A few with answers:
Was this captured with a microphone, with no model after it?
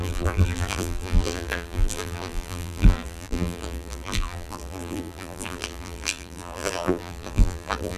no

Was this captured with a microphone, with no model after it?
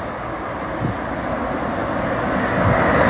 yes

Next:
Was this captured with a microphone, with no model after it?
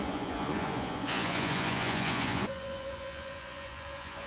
no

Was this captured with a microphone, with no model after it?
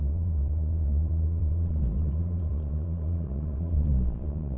no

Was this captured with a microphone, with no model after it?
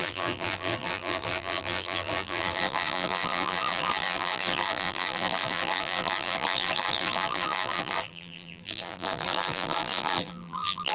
no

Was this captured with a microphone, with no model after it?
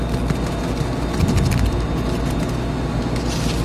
yes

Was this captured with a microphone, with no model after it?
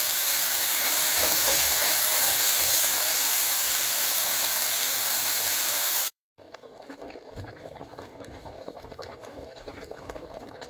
no